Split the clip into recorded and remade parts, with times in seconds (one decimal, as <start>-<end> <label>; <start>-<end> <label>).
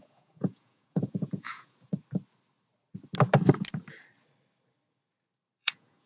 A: 0.0-1.9 remade; 1.9-5.6 recorded; 5.6-6.1 remade